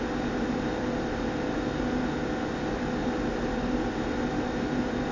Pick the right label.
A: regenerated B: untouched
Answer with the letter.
B